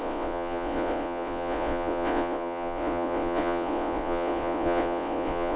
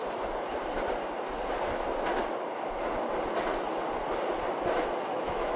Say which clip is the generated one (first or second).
first